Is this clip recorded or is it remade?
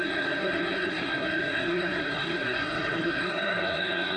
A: remade